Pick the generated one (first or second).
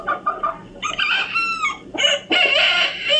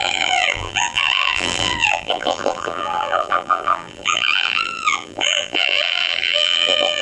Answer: second